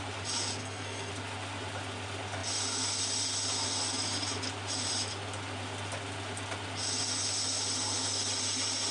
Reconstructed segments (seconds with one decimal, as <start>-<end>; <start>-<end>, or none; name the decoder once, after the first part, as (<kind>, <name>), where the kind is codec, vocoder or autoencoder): 0.6-1.1 (codec, SNAC)